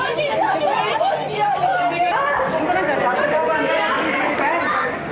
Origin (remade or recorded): recorded